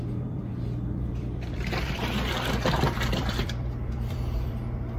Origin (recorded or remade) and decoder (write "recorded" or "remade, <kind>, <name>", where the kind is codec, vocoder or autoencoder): remade, vocoder, BigVGAN v2